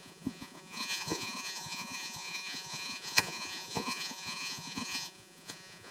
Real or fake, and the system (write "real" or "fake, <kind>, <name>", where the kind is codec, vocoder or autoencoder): fake, vocoder, Vocos